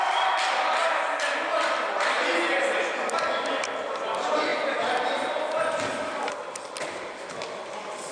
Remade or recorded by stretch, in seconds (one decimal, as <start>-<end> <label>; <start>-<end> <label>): 0.0-8.1 recorded